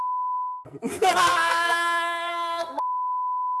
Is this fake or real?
fake